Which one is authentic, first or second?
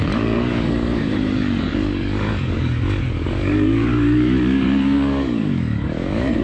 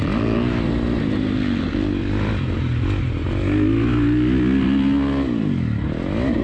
second